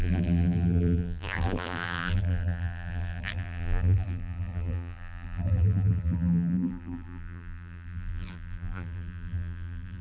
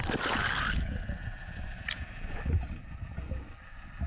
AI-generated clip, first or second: first